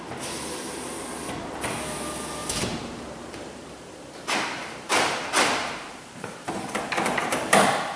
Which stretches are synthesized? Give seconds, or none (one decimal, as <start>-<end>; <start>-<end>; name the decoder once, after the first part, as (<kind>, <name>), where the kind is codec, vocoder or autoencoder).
2.4-7.2 (vocoder, BigVGAN v2)